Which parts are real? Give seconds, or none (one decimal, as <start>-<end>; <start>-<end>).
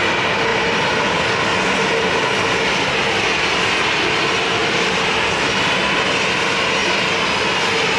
0.0-0.5; 1.2-4.6; 5.1-6.8; 7.6-8.0